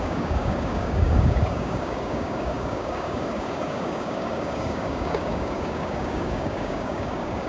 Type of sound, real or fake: fake